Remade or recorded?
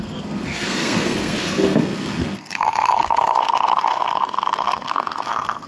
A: remade